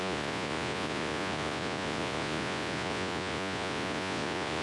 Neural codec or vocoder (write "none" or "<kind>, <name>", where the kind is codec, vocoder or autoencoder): vocoder, Vocos